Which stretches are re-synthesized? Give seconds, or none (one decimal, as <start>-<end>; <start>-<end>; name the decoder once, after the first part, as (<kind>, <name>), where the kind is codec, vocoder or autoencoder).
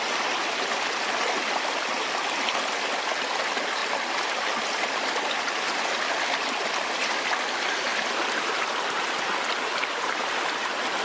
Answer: none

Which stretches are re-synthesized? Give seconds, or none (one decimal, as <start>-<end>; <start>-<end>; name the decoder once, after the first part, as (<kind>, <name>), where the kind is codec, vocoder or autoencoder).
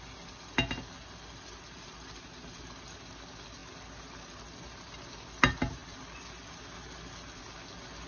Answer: none